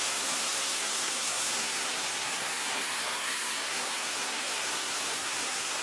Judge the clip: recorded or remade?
remade